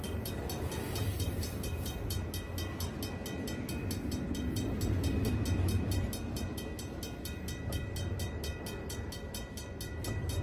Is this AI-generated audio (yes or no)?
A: no